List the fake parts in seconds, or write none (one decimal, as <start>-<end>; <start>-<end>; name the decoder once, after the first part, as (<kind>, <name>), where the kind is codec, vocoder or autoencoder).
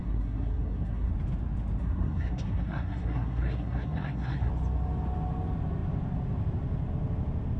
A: 0.0-1.1 (codec, SNAC); 1.8-4.5